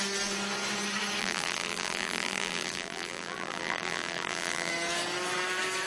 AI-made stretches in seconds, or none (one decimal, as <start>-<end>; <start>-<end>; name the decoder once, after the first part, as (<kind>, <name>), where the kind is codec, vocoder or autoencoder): 1.2-4.7 (vocoder, BigVGAN v2)